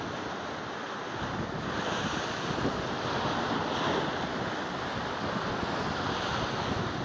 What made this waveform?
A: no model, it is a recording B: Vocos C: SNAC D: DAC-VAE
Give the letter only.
A